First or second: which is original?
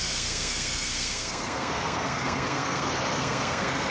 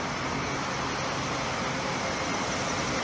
second